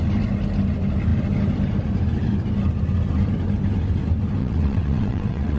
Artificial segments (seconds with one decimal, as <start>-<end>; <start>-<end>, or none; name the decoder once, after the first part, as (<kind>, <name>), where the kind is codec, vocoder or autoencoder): 4.4-5.6 (vocoder, WaveNeXt)